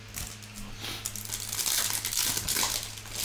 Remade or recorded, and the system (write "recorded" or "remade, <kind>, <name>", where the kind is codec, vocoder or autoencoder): recorded